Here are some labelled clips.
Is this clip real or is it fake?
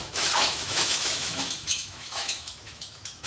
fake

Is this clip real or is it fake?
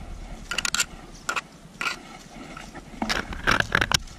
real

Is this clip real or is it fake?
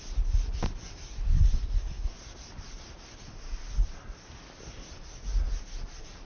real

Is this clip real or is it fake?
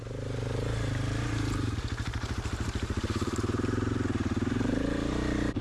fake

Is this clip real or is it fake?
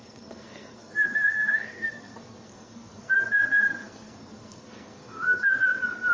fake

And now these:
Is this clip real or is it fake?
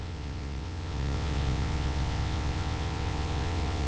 fake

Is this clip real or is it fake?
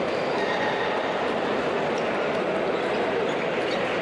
fake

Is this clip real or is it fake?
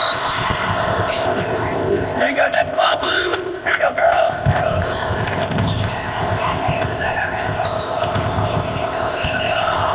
fake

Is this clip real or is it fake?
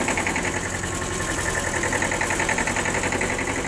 real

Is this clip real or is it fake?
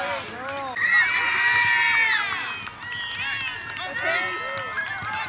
real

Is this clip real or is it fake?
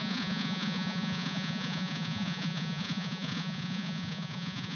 fake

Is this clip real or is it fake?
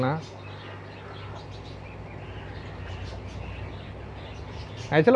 real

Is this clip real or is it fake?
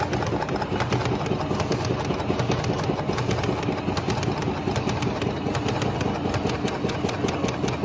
real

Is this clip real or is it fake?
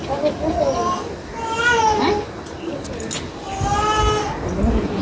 real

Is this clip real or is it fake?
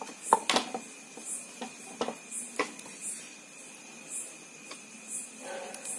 real